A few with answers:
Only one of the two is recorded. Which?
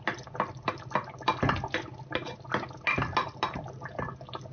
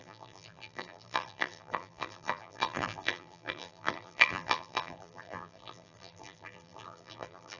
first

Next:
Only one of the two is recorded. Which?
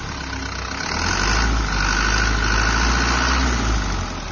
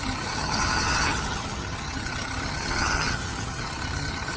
first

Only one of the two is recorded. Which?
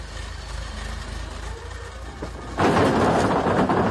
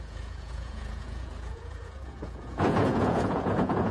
first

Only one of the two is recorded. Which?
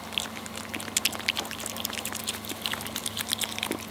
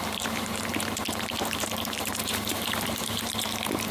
first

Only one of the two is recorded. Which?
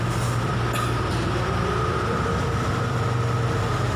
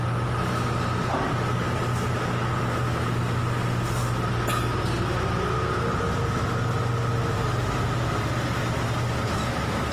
second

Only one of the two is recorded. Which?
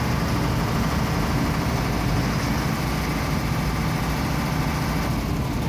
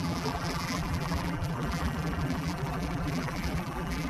first